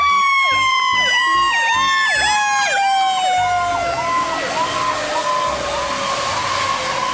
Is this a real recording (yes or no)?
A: yes